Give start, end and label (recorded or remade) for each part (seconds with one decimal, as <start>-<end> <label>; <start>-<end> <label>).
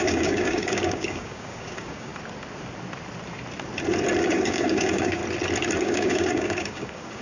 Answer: 0.0-2.1 remade; 2.1-4.2 recorded; 4.2-5.2 remade; 5.2-5.8 recorded; 5.8-7.2 remade